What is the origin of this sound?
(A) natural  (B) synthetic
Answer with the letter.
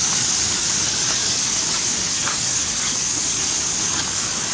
B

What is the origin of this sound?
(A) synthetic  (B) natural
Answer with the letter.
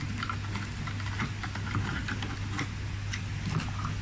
B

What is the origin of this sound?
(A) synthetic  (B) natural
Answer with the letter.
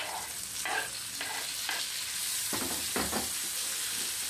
B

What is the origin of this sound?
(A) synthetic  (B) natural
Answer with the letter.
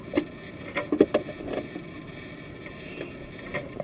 B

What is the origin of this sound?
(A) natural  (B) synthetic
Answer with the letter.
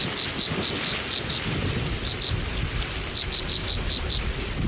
A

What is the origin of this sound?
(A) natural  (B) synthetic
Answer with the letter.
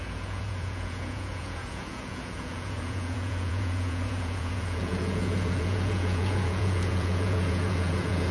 B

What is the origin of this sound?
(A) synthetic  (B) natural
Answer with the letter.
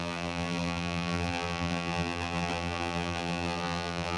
A